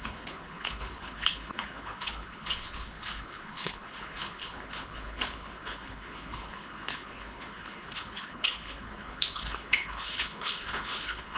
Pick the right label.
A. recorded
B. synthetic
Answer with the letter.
B